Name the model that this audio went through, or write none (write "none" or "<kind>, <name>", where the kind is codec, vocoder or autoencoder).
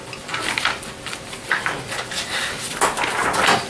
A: none